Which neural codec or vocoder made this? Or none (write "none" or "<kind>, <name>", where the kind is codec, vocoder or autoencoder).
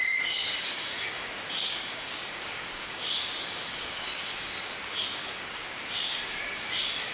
codec, DAC